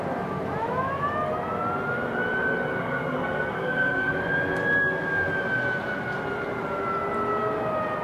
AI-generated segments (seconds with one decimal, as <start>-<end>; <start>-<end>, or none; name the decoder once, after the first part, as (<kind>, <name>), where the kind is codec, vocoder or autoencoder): 2.8-4.1 (codec, SNAC)